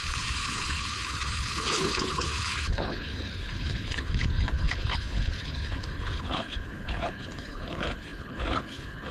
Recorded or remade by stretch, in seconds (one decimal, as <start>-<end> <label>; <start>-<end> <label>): 0.0-9.1 remade